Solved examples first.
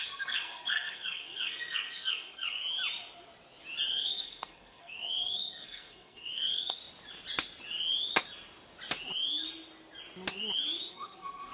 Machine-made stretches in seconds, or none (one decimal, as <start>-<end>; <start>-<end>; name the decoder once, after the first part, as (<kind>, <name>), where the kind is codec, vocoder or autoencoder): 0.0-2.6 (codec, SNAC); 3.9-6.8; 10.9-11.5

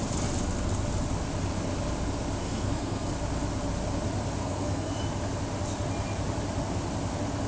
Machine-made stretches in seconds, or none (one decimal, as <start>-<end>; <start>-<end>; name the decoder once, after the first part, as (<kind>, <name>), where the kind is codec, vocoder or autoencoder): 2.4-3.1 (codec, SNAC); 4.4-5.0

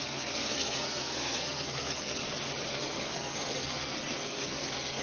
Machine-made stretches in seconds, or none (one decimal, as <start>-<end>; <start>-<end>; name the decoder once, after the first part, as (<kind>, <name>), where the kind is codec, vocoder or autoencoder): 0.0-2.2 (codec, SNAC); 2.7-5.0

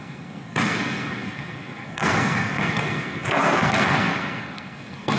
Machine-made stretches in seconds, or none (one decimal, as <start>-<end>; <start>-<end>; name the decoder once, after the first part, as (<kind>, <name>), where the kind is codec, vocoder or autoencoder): 0.0-5.2 (codec, SNAC)